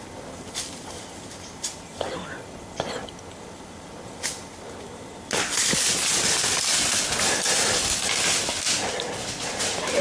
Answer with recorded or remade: recorded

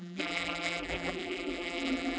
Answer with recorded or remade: remade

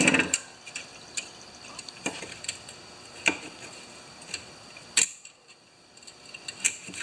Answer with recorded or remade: remade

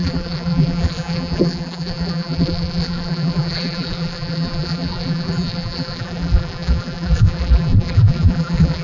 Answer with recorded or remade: remade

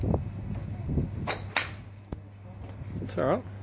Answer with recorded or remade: recorded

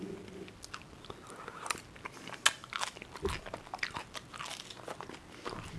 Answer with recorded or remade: recorded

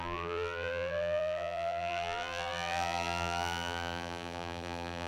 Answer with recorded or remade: remade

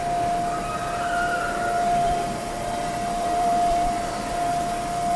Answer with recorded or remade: remade